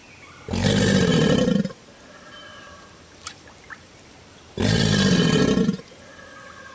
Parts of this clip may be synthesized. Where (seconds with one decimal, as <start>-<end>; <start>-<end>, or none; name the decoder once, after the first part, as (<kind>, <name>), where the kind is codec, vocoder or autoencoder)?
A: 2.5-5.4 (vocoder, BigVGAN v2)